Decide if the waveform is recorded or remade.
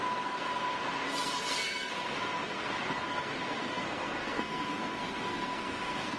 remade